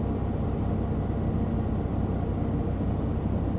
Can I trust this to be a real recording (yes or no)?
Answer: yes